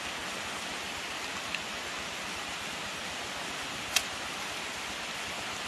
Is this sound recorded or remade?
recorded